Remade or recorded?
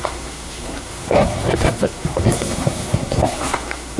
remade